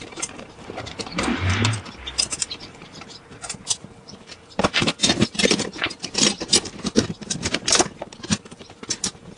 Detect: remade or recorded remade